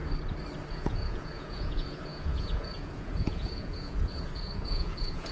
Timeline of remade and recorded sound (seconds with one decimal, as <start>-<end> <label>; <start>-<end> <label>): 0.0-0.7 recorded; 0.7-5.3 remade